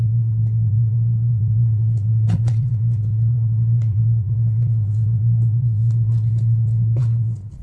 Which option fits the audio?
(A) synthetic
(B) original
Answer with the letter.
A